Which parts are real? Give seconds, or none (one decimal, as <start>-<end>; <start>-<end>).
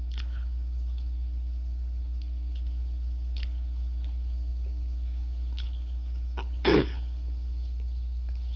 none